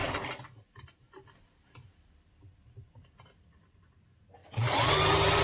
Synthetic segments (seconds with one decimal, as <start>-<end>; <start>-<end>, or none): 4.4-4.9